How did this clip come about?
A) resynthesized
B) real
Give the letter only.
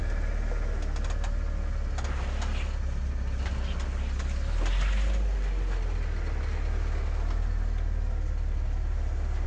B